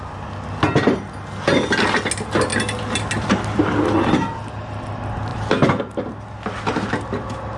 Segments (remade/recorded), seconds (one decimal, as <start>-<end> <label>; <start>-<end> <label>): 0.0-7.6 recorded